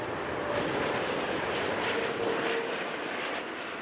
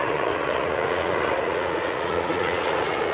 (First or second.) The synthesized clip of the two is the second